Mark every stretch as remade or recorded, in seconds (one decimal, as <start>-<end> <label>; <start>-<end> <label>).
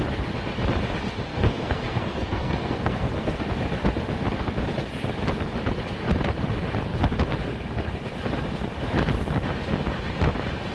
0.0-1.3 recorded; 1.3-3.4 remade; 3.4-10.7 recorded